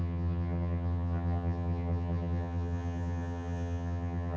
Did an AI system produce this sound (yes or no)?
yes